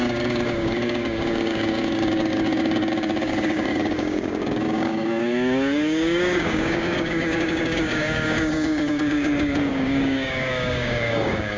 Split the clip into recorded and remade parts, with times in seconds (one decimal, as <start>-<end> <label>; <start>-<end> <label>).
0.0-11.6 remade